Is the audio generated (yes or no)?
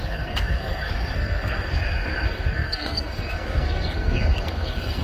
yes